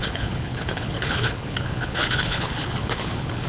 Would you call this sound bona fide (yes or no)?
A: no